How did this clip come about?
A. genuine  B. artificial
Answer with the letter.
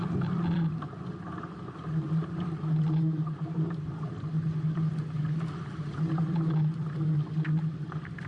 A